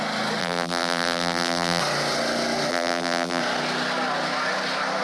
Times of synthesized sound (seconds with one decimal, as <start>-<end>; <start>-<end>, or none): 0.4-1.8; 2.7-3.4

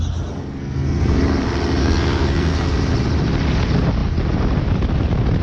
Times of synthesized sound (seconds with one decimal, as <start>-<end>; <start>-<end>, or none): 0.4-1.2; 1.8-2.8